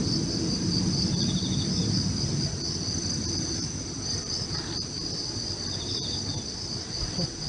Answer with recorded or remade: recorded